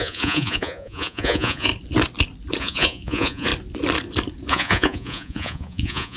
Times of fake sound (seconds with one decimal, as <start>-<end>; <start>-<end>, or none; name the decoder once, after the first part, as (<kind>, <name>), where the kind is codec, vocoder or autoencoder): 0.0-1.7 (vocoder, Vocos); 2.6-3.5; 4.5-6.2